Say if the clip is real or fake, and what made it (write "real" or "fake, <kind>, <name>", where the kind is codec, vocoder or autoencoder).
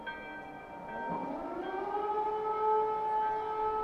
real